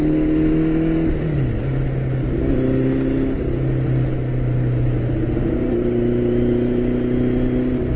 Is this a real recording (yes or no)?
yes